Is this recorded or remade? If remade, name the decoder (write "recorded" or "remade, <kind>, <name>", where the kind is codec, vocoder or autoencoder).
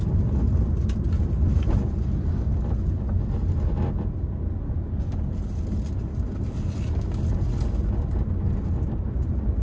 recorded